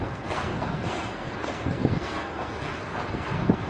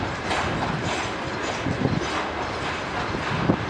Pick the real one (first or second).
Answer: second